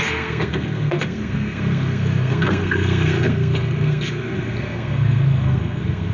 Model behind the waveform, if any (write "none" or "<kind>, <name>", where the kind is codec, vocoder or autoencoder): codec, SNAC